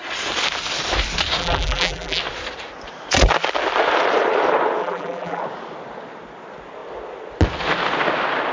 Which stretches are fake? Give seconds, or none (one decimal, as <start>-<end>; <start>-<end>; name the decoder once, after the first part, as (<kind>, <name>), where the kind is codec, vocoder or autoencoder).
1.4-2.2 (vocoder, BigVGAN v2); 4.8-5.4